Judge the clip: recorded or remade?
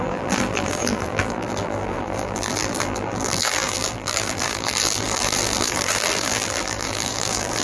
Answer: remade